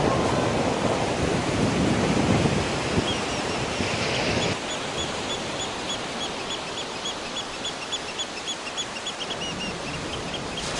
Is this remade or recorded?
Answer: recorded